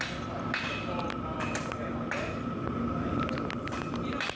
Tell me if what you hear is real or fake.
real